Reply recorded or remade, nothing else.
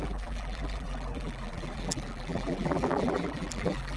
remade